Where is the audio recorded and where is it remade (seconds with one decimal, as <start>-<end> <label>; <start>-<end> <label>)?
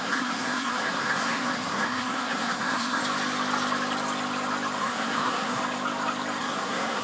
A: 0.0-3.0 remade; 3.0-4.8 recorded; 4.8-5.6 remade; 5.6-6.4 recorded; 6.4-7.0 remade